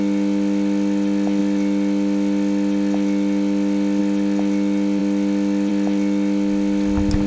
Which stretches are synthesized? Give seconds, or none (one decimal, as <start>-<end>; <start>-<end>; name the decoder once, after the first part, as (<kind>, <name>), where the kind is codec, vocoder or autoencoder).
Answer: none